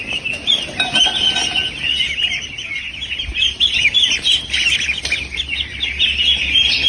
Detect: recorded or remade recorded